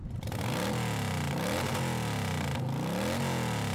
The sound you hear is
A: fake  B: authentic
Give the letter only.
B